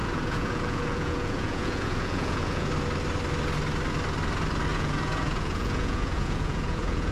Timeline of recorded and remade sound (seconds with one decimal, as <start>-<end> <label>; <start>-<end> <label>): 0.0-2.7 remade; 2.7-4.7 recorded; 4.7-7.1 remade